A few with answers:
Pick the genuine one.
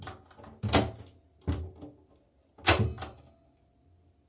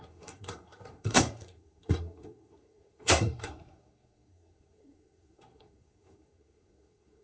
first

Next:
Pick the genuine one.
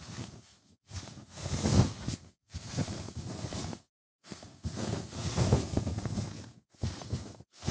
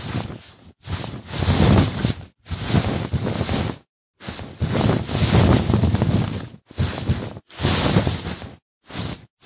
second